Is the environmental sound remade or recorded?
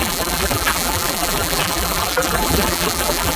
remade